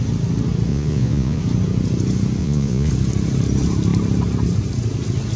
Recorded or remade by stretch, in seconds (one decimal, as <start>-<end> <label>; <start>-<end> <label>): 0.0-0.7 recorded; 0.7-1.4 remade; 1.4-2.4 recorded; 2.4-2.9 remade; 2.9-5.4 recorded